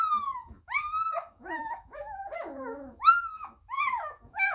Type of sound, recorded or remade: remade